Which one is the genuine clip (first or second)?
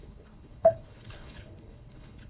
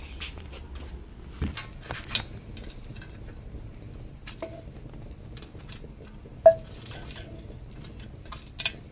second